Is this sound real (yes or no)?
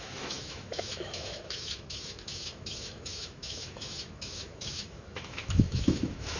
no